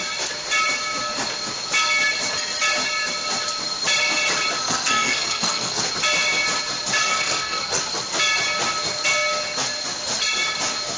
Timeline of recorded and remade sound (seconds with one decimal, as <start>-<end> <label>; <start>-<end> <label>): 0.0-4.6 recorded; 4.6-5.8 remade; 5.8-7.0 recorded; 7.0-7.8 remade; 7.8-11.0 recorded